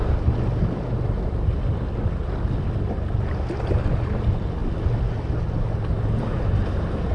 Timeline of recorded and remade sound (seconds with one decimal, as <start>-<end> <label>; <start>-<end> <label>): 0.0-7.1 recorded